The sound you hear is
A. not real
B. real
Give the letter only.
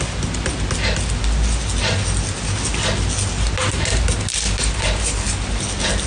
B